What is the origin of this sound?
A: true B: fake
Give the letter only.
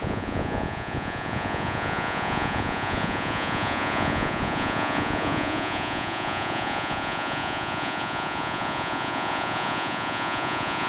B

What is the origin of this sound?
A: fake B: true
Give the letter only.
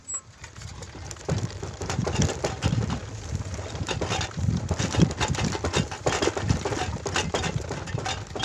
B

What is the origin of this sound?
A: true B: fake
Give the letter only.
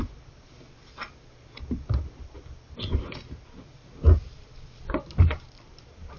A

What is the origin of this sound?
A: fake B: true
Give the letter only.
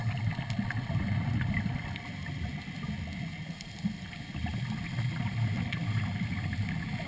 B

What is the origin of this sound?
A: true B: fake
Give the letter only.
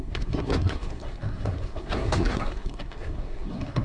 B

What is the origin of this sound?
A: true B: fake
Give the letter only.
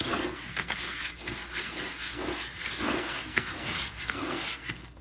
B